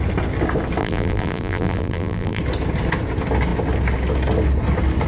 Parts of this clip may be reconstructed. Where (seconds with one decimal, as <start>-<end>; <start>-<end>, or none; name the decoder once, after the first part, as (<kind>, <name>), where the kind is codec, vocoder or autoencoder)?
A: 0.8-2.4 (vocoder, BigVGAN v2)

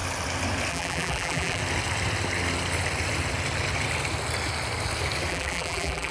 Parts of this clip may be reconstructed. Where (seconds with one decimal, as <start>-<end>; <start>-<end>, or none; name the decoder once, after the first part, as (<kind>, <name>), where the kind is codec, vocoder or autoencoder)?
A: 0.7-1.6 (vocoder, BigVGAN v2); 5.3-6.1

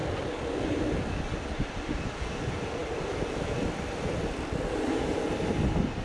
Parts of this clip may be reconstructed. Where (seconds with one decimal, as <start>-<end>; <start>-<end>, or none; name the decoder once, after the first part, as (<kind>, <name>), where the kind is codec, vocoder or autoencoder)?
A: none

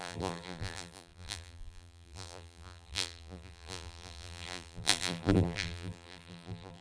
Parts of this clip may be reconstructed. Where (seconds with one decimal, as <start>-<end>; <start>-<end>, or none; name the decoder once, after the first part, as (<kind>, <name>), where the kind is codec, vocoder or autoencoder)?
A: 0.0-6.8 (vocoder, BigVGAN v2)

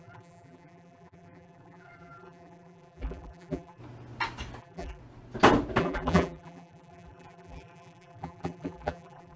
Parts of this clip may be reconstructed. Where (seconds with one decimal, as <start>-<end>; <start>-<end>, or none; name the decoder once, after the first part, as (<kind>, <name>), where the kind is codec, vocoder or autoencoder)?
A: 0.0-3.8 (vocoder, BigVGAN v2); 4.6-5.0; 5.8-9.4

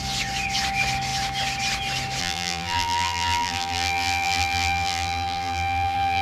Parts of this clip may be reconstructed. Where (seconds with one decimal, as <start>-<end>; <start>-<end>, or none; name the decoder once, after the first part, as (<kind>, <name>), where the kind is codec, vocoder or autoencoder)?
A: 2.2-6.2 (vocoder, BigVGAN v2)

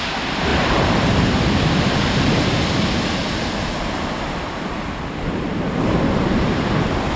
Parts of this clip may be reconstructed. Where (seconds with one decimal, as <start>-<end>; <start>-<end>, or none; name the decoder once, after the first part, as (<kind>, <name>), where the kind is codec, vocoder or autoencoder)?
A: 0.5-1.8 (vocoder, BigVGAN v2)

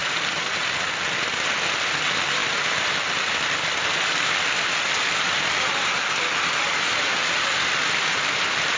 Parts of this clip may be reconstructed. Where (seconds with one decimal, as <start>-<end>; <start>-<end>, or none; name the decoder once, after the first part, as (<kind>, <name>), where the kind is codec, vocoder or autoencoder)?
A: 2.4-5.5 (vocoder, BigVGAN v2)